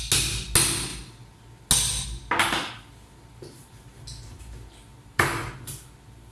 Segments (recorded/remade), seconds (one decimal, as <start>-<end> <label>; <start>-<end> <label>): 0.0-6.3 recorded